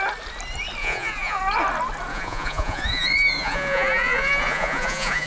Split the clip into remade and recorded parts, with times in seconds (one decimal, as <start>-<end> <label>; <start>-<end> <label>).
0.0-0.8 recorded; 0.8-1.4 remade; 1.4-2.1 recorded; 2.1-5.3 remade